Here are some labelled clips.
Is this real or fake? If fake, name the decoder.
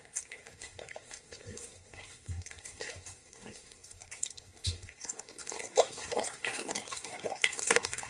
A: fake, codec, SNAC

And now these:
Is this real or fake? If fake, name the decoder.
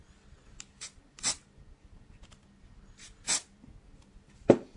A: real